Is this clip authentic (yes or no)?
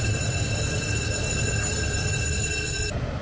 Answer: no